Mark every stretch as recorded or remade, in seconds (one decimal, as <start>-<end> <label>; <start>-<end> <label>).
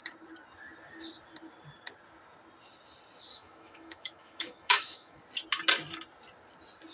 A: 0.0-3.3 recorded; 3.3-5.2 remade; 5.2-6.9 recorded